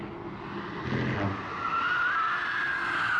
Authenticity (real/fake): real